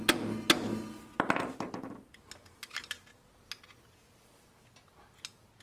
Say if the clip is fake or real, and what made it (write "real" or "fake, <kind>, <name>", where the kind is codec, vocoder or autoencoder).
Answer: real